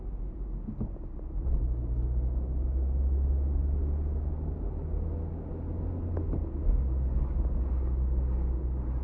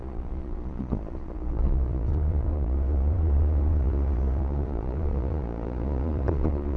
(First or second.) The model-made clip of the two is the second